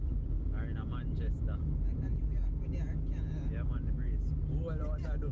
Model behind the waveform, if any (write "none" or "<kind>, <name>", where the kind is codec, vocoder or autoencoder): none